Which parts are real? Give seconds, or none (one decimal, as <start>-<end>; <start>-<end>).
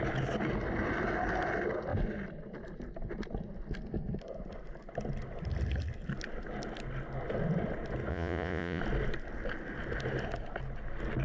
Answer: 0.0-8.1; 8.8-11.2